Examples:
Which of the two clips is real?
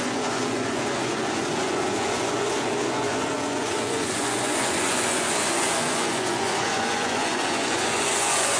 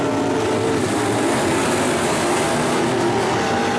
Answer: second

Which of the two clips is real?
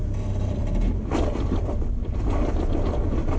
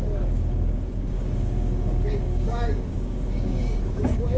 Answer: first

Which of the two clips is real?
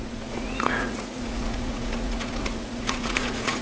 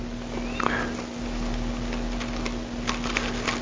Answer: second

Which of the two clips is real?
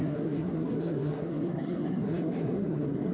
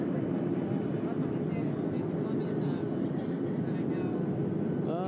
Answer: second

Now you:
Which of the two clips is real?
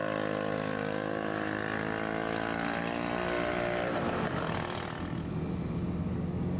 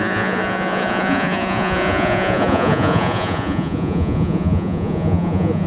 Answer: first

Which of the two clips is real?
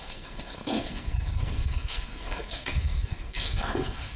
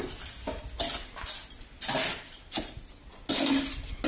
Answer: second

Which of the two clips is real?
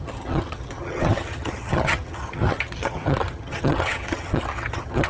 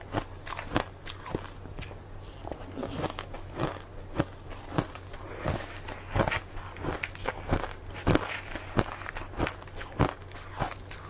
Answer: second